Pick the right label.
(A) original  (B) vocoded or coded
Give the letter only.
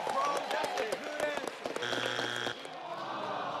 A